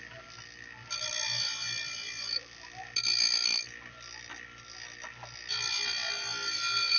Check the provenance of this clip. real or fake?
real